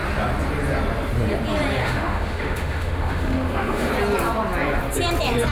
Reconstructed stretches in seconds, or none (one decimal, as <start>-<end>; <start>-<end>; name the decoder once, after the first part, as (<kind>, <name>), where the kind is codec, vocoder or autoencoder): 1.8-3.9 (autoencoder, DAC-VAE)